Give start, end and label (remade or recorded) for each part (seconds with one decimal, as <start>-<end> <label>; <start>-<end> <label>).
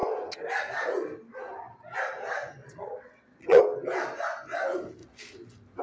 0.0-2.6 recorded; 2.6-3.6 remade; 3.6-5.8 recorded